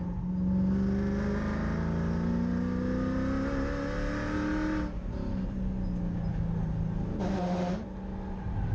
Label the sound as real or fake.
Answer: real